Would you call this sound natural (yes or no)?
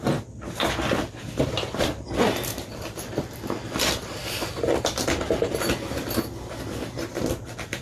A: yes